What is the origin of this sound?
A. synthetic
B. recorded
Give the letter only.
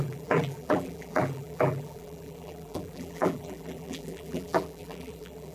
A